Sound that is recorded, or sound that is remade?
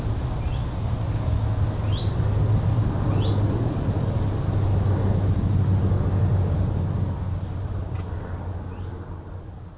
recorded